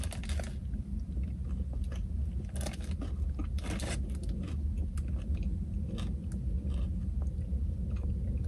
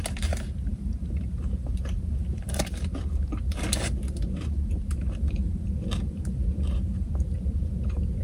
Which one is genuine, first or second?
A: first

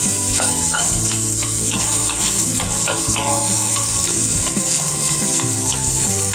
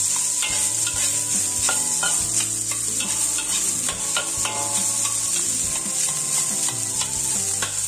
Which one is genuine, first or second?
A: second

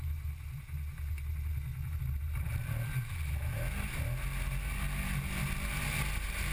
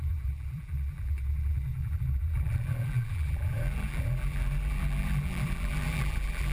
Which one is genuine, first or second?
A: first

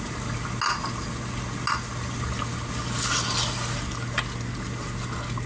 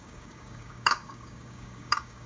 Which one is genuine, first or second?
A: first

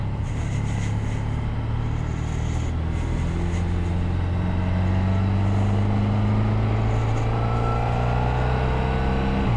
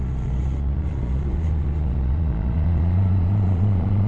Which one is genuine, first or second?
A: first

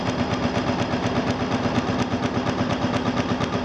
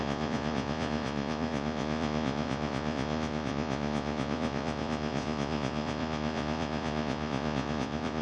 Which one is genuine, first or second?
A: first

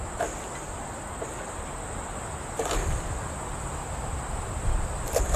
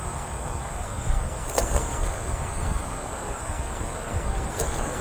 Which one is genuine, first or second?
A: first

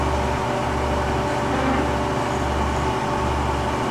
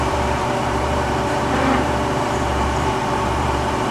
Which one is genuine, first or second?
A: first